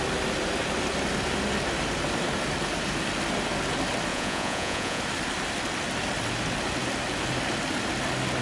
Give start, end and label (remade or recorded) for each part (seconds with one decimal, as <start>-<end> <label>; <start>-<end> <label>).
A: 0.0-4.1 recorded; 4.1-5.0 remade; 5.0-8.4 recorded